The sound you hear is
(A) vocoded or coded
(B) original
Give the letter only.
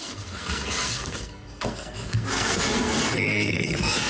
A